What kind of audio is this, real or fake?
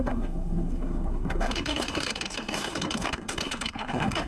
fake